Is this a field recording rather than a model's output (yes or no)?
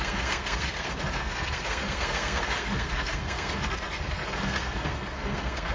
no